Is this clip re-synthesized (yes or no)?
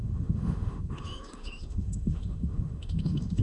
yes